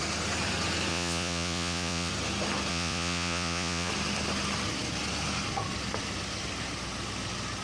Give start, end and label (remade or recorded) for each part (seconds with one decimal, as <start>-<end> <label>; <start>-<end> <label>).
0.0-0.9 recorded; 0.9-2.1 remade; 2.1-2.7 recorded; 2.7-3.9 remade; 3.9-7.6 recorded

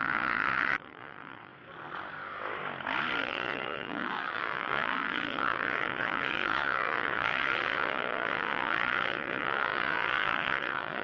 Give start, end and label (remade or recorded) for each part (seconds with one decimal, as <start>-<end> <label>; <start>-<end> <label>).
0.0-1.5 remade; 1.5-3.2 recorded; 3.2-11.0 remade

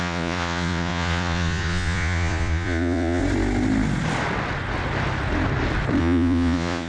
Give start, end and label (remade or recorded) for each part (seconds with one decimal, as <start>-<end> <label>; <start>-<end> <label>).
0.0-3.2 remade; 3.2-6.0 recorded; 6.0-6.9 remade